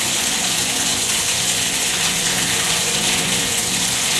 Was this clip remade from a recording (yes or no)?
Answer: yes